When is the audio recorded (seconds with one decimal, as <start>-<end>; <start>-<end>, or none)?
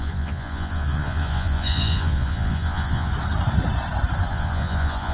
3.1-4.3